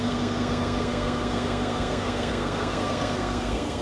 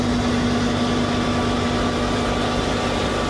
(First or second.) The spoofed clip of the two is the first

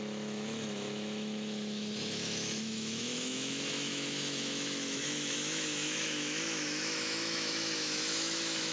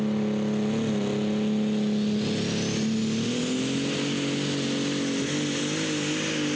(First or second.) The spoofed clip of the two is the first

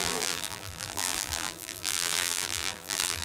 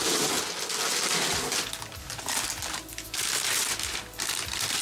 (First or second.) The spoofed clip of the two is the first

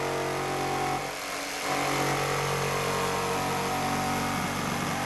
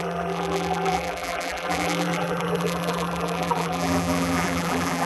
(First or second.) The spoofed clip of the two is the second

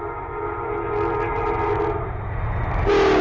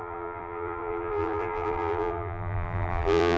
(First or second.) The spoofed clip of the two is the second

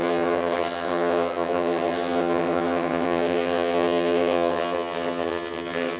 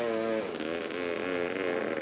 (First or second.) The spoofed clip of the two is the first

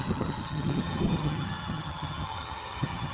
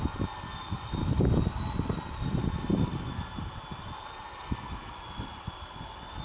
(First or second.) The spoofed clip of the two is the first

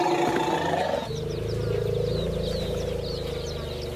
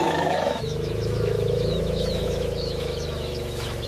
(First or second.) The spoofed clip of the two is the second